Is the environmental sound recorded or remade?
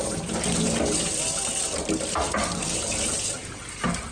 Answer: recorded